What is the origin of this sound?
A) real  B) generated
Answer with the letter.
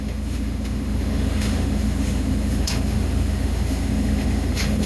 B